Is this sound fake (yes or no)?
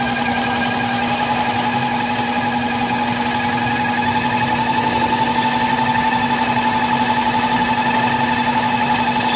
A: no